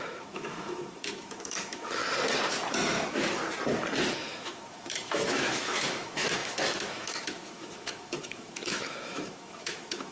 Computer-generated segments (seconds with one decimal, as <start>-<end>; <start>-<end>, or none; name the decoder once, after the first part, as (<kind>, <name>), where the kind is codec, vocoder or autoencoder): 0.0-2.0 (autoencoder, DAC-VAE); 2.7-3.4; 4.1-10.1